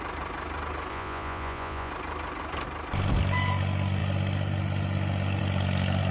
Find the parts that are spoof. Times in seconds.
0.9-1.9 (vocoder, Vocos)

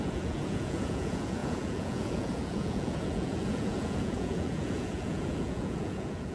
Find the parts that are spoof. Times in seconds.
0.0-6.3 (vocoder, Vocos)

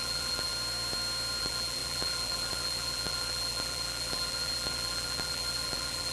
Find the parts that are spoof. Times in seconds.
0.0-0.5 (vocoder, BigVGAN v2); 1.4-6.1

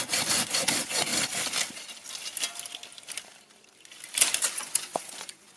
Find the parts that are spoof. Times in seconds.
0.0-1.1 (vocoder, Vocos); 4.5-5.6

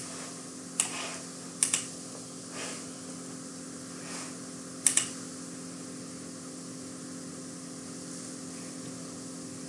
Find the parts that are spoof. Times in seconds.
none

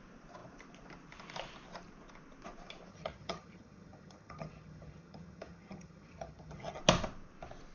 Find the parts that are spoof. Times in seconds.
2.9-6.8 (vocoder, HiFi-GAN)

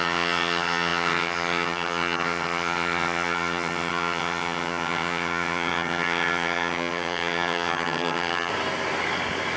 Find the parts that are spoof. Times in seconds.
0.0-8.5 (vocoder, HiFi-GAN)